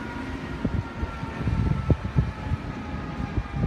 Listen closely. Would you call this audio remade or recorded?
recorded